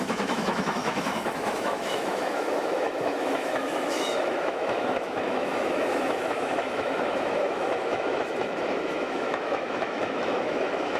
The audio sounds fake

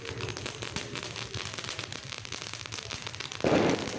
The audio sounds real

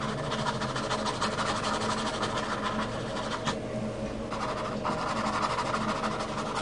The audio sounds real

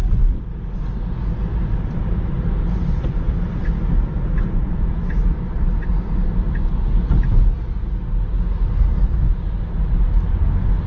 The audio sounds real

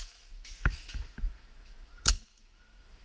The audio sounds fake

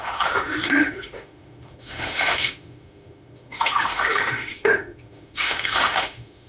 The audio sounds fake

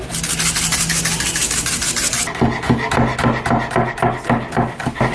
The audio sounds real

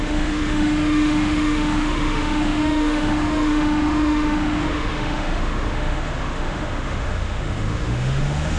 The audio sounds fake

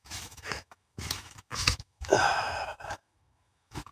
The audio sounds fake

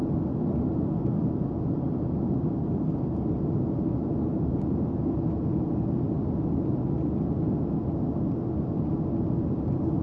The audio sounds real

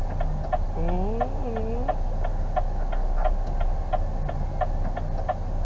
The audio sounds real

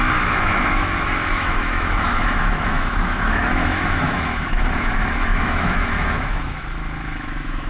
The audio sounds fake